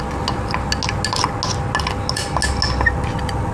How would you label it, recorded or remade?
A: recorded